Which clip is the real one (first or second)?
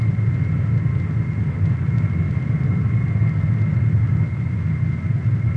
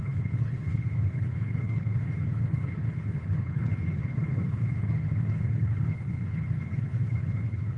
first